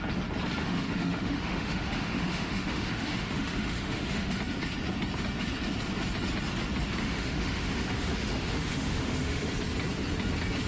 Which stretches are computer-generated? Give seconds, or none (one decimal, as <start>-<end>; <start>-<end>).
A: 0.6-4.4; 7.0-9.5